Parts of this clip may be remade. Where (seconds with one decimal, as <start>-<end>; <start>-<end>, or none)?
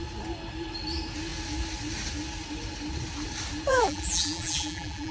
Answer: 3.7-5.1